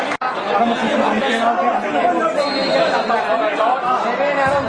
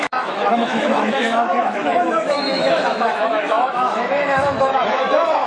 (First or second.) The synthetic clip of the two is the second